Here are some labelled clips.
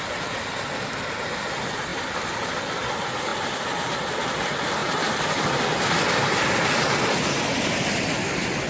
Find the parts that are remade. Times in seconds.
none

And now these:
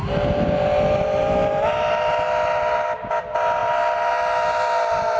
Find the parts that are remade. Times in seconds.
none

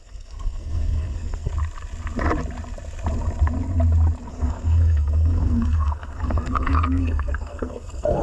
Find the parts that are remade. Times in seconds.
0.0-1.5 (codec, SNAC); 4.3-8.2